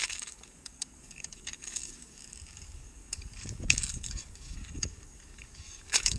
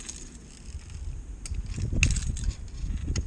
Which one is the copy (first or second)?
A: first